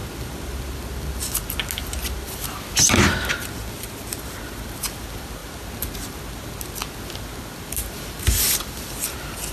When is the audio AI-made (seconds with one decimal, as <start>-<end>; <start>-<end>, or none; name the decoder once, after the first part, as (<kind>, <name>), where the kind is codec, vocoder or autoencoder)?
none